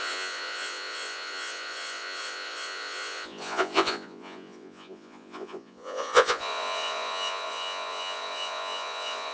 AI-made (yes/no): yes